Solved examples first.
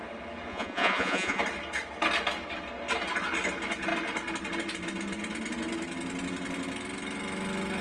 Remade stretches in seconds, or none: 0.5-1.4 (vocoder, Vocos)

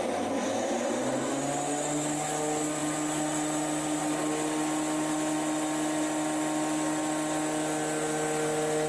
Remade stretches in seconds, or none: none

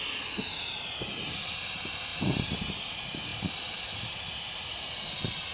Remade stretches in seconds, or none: 2.1-2.7 (vocoder, BigVGAN v2)

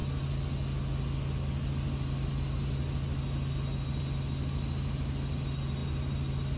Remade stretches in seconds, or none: none

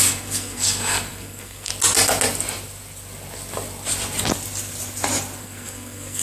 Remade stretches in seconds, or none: 0.0-1.7 (codec, SNAC); 5.4-6.2

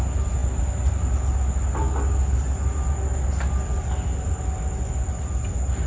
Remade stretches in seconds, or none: none

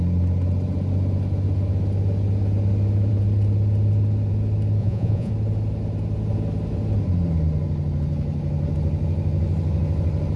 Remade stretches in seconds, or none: 4.8-5.3 (vocoder, Vocos)

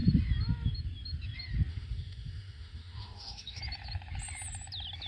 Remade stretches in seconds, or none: 1.7-3.6 (autoencoder, DAC-VAE)